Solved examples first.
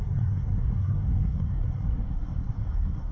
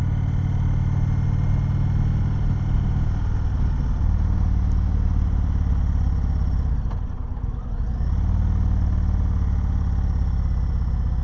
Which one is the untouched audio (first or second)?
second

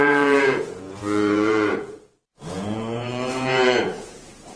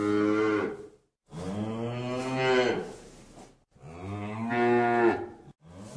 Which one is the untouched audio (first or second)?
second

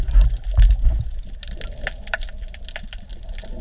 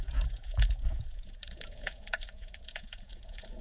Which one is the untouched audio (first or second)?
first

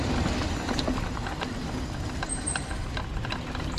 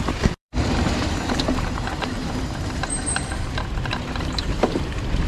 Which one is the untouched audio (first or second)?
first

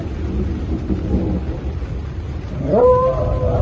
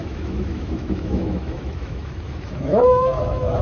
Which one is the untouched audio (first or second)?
first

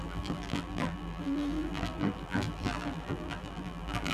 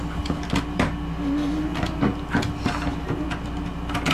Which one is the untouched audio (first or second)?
second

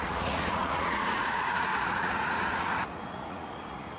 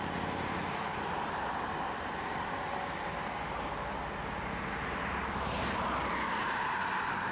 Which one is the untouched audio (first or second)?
second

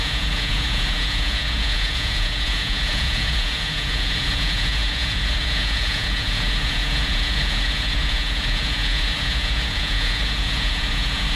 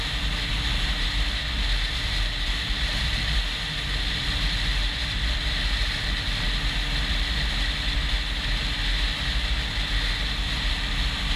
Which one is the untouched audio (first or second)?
second